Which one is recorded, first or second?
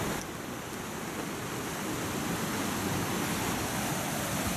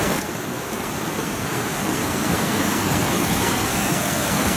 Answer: first